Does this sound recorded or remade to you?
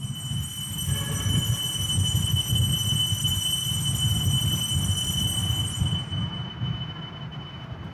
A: recorded